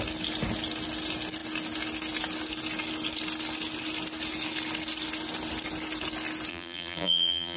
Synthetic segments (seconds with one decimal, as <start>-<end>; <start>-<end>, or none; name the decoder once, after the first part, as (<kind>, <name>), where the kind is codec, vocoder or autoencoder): 6.5-7.6 (vocoder, BigVGAN v2)